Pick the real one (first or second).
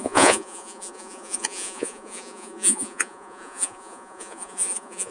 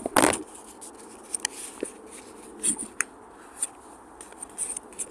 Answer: second